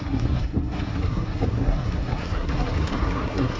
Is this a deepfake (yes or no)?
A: yes